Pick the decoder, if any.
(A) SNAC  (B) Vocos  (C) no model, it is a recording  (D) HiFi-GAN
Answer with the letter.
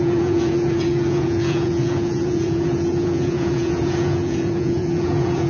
B